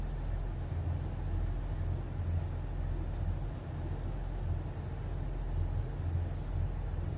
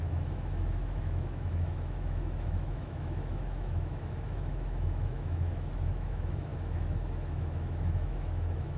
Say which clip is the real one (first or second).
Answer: first